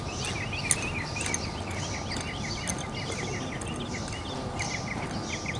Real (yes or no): yes